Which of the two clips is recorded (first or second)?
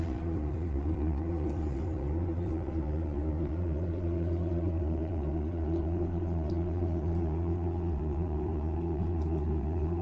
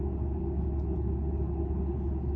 second